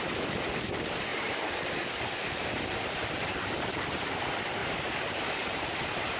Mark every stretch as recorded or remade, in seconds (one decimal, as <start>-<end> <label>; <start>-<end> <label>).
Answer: 0.0-1.1 recorded; 1.1-1.7 remade; 1.7-4.6 recorded; 4.6-6.2 remade